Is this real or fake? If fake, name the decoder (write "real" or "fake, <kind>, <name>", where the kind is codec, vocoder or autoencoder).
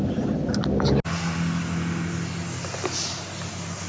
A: real